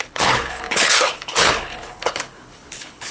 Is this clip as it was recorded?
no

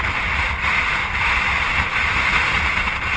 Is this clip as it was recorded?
yes